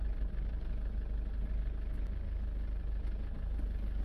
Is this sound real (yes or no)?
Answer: yes